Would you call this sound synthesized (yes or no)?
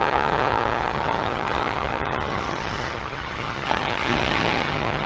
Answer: yes